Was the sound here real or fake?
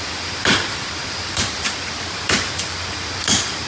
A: fake